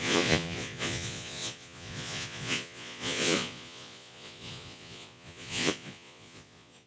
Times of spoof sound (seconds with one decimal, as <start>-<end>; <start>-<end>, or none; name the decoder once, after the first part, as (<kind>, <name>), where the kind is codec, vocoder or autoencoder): 0.0-6.9 (vocoder, Vocos)